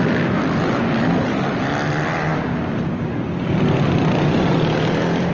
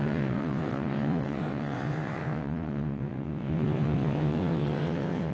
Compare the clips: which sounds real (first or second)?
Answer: first